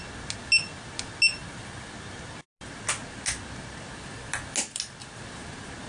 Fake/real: real